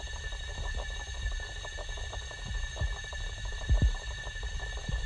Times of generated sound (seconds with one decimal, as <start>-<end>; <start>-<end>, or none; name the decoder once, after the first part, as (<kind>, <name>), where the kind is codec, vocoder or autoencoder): 0.0-0.5 (vocoder, BigVGAN v2); 3.5-5.1